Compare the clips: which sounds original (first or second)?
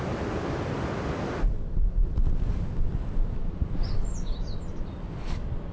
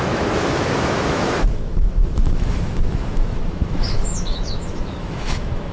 first